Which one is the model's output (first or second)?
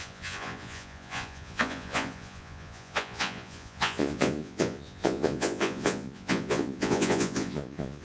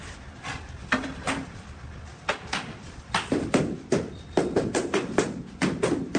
first